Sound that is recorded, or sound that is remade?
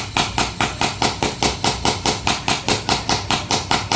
recorded